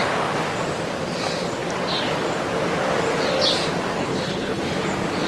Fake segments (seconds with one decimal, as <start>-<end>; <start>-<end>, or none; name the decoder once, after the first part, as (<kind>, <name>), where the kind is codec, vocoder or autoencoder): 4.0-4.6 (codec, HILCodec)